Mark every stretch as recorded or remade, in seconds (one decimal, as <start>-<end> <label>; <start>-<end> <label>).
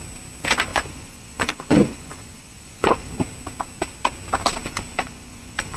0.0-0.7 recorded; 0.7-3.1 remade; 3.1-4.6 recorded; 4.6-5.8 remade